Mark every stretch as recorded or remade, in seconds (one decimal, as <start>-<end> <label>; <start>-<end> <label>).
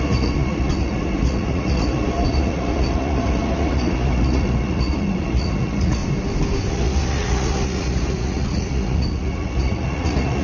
0.0-6.0 remade; 6.0-6.7 recorded; 6.7-10.4 remade